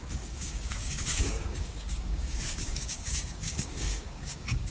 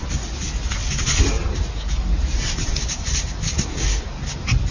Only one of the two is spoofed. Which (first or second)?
first